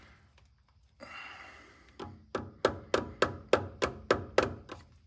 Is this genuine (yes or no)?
yes